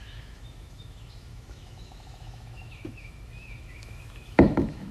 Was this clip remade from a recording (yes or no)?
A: yes